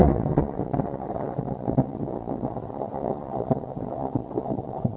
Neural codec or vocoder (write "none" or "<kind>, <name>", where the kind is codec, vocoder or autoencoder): vocoder, WaveNeXt